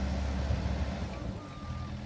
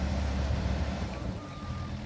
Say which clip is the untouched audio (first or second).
first